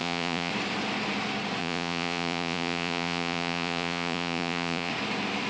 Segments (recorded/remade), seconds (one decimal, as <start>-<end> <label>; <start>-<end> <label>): 0.0-0.5 remade; 0.5-1.6 recorded; 1.6-4.9 remade; 4.9-5.5 recorded